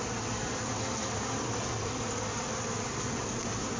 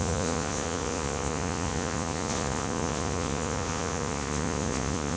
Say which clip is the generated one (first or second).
second